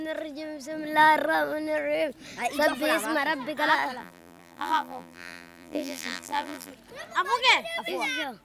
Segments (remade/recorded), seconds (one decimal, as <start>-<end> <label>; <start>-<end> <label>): 0.0-4.0 recorded; 4.0-6.7 remade; 6.7-8.4 recorded